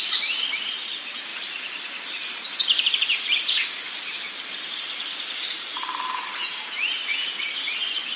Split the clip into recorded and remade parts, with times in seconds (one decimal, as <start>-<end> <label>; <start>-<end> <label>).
0.0-7.0 remade; 7.0-7.5 recorded; 7.5-8.2 remade